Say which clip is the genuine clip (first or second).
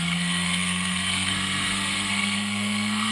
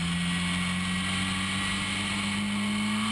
second